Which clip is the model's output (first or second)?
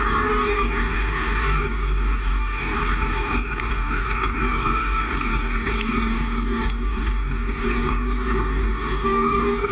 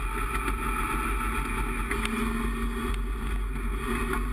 first